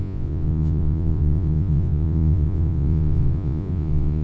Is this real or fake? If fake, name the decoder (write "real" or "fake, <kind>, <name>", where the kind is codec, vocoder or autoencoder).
fake, vocoder, Vocos